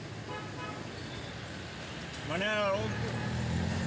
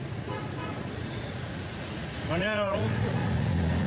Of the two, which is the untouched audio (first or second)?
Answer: first